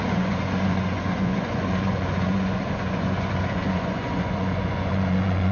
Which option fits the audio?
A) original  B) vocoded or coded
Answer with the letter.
B